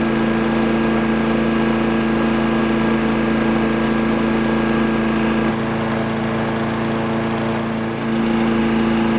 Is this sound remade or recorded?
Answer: recorded